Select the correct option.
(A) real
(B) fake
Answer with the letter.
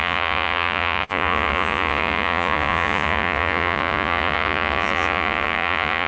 B